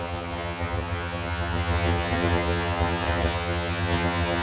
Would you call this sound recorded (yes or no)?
no